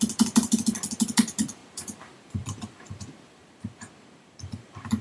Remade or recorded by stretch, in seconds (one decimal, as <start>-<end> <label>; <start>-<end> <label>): 0.0-1.6 recorded; 1.6-3.9 remade; 3.9-5.0 recorded